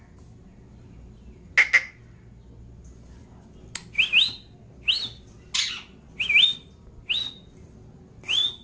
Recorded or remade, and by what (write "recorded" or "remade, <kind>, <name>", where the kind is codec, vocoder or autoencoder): recorded